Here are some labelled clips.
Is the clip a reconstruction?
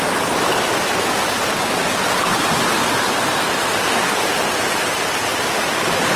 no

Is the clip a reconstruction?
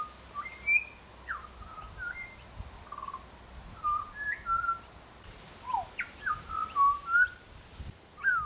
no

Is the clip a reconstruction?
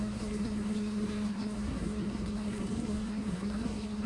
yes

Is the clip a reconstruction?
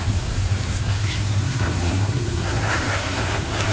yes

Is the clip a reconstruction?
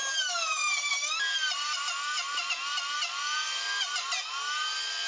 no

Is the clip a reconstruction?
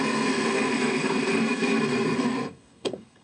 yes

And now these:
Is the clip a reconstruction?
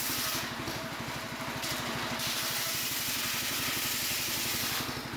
no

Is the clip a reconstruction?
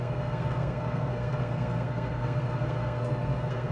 yes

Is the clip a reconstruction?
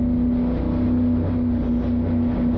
no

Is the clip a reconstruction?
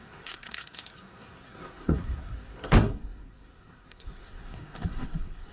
yes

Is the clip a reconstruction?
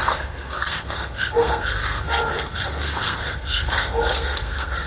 yes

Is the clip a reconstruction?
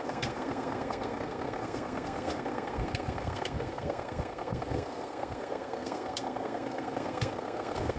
yes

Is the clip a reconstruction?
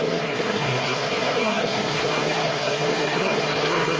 yes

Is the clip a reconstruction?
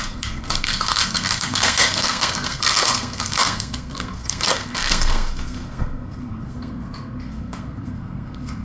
yes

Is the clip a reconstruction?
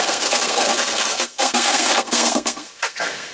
yes